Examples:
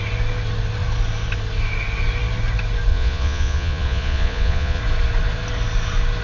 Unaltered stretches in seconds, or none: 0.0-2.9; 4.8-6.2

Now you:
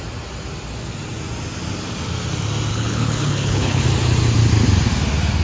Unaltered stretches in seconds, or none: 0.0-2.7; 3.8-5.4

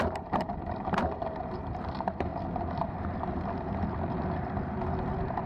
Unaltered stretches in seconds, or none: 2.3-5.5

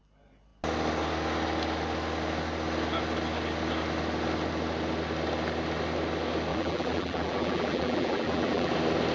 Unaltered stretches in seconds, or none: 0.0-6.5; 8.7-9.1